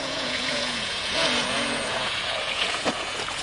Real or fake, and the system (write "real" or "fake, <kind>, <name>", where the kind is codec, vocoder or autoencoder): fake, vocoder, Vocos